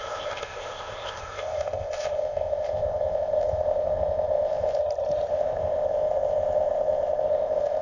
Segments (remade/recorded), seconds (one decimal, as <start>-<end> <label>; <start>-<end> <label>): 0.0-4.8 remade; 4.8-5.3 recorded; 5.3-7.8 remade